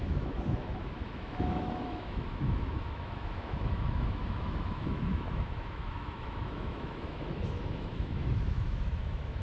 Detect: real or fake fake